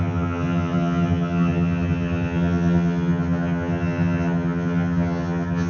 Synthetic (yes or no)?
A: yes